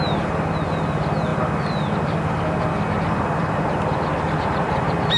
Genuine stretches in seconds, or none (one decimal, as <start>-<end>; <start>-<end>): 0.0-4.1